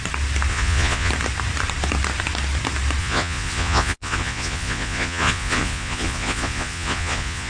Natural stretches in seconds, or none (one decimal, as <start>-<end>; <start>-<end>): 0.0-0.5; 1.1-3.0